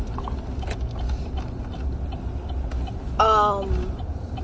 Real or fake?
real